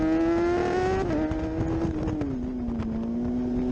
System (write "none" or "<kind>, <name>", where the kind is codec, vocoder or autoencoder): none